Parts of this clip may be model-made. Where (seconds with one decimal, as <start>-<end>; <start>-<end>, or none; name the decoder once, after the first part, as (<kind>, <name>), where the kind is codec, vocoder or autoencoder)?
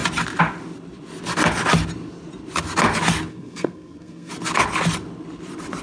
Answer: 3.3-4.3 (codec, SNAC)